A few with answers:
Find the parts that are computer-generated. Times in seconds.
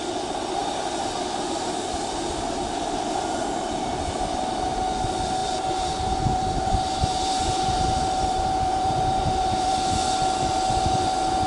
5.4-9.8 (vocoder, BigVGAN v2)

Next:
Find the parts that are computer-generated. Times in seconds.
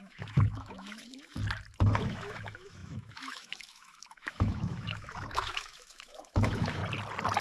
0.0-1.4 (autoencoder, DAC-VAE); 2.0-6.8